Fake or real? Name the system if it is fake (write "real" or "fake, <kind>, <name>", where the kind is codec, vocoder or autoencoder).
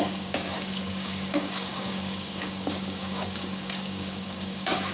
fake, codec, DAC